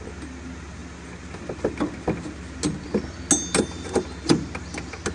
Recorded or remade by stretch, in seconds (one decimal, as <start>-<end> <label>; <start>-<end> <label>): 0.0-5.1 recorded